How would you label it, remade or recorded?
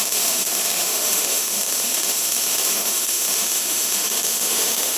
remade